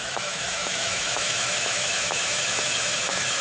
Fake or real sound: fake